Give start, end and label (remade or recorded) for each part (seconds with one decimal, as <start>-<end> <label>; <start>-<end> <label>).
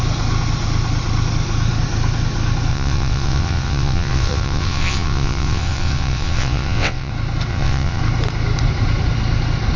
0.0-2.7 recorded; 2.7-7.1 remade; 7.1-7.5 recorded; 7.5-8.0 remade; 8.0-9.8 recorded